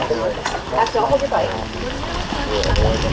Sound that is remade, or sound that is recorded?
recorded